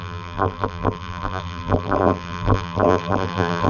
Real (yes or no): no